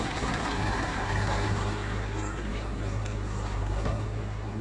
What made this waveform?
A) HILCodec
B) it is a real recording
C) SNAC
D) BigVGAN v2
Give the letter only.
C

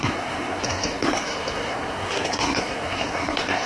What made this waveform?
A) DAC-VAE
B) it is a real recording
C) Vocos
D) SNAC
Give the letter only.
D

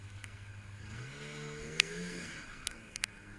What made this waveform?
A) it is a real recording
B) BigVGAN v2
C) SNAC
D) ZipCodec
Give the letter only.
C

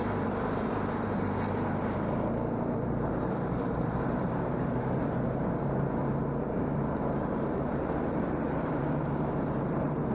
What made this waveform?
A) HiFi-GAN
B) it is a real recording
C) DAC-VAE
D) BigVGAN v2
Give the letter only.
D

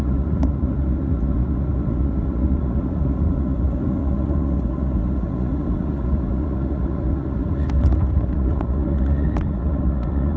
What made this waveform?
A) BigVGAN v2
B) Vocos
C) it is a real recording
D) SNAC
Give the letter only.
B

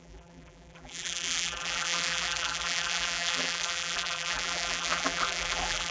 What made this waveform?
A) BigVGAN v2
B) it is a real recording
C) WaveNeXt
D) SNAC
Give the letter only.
A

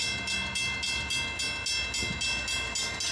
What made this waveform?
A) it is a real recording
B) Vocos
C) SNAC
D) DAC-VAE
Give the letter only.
A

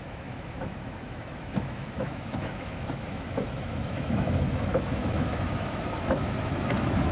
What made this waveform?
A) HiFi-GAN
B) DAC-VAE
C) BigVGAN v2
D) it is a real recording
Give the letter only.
B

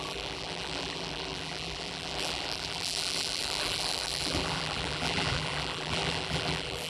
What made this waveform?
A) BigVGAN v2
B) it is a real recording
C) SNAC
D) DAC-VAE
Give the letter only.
A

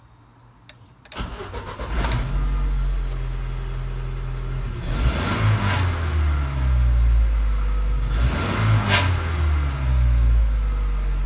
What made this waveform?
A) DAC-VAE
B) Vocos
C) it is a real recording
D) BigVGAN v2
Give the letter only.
C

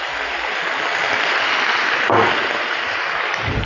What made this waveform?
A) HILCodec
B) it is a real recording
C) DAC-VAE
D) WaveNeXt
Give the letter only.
B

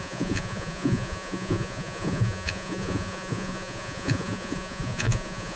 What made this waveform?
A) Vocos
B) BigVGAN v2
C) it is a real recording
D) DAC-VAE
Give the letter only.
A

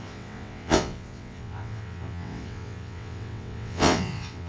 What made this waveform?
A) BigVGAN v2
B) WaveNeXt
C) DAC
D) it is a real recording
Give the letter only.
B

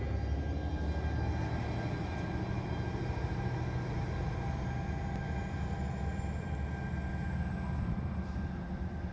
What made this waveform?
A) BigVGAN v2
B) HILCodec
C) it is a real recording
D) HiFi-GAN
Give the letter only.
C